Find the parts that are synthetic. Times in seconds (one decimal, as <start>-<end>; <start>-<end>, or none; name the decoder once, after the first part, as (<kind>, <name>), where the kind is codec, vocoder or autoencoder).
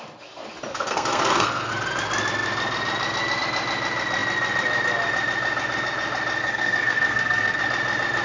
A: 0.7-1.7 (codec, SNAC); 6.4-7.6